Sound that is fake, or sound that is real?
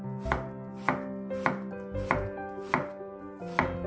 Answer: real